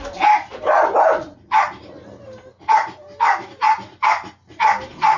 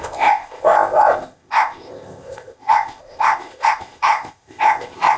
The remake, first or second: second